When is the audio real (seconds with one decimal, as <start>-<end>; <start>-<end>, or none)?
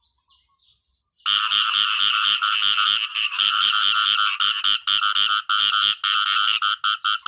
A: 0.0-3.2; 3.7-7.3